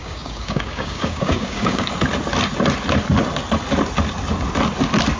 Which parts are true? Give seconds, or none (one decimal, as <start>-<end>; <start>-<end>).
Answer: 1.9-5.2